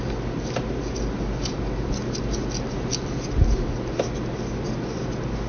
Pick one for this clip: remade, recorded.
recorded